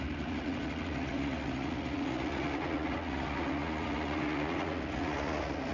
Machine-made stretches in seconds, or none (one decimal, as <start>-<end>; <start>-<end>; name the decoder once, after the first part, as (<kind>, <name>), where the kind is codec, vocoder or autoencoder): 0.0-5.7 (vocoder, Vocos)